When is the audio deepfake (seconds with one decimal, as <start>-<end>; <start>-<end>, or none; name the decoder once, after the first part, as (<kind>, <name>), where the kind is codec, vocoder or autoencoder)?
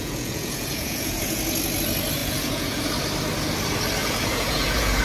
0.0-1.4 (vocoder, Vocos); 2.2-2.9; 4.0-5.0